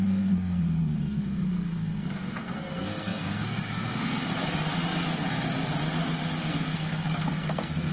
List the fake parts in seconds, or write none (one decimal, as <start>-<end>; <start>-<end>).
0.0-4.3; 6.5-7.9